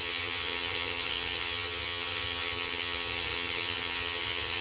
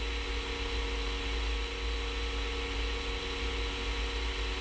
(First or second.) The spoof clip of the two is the first